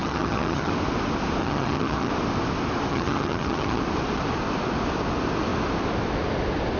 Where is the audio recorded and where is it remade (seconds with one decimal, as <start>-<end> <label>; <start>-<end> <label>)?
0.0-0.7 remade; 0.7-1.4 recorded; 1.4-2.1 remade; 2.1-2.9 recorded; 2.9-3.8 remade; 3.8-6.8 recorded